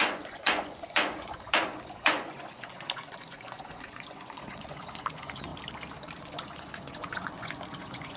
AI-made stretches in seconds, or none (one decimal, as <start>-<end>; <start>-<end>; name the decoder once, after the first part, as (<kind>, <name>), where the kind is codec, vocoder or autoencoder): 0.0-5.5 (vocoder, Vocos); 6.2-8.2